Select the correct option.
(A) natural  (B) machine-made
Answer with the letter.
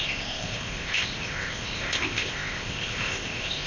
B